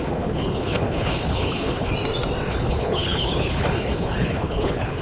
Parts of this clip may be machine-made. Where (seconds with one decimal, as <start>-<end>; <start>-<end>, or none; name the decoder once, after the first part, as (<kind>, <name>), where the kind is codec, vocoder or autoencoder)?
0.0-1.9 (codec, HILCodec); 2.5-5.0